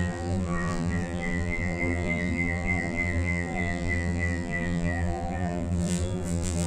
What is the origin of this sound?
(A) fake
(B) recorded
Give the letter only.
A